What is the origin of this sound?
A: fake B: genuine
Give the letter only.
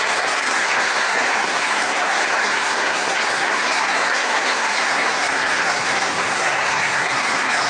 A